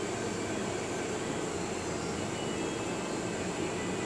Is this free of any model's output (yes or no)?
yes